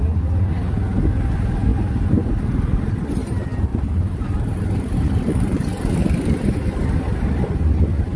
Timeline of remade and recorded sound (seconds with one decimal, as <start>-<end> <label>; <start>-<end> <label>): 0.0-1.7 recorded; 1.7-2.4 remade; 2.4-3.7 recorded; 3.7-7.2 remade; 7.2-8.2 recorded